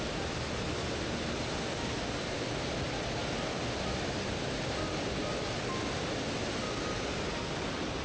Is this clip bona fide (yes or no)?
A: yes